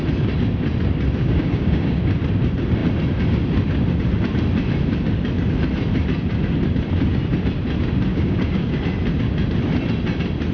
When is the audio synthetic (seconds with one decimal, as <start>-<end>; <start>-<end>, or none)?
1.2-2.0; 8.1-8.8